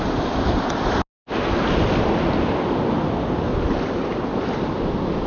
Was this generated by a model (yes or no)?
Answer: no